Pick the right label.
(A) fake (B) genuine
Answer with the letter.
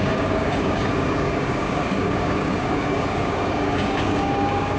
A